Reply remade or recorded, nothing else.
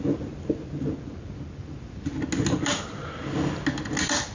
recorded